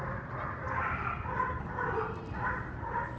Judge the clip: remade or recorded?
recorded